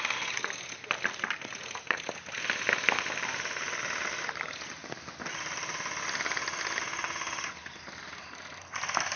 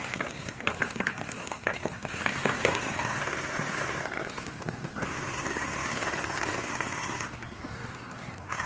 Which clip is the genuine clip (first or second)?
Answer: first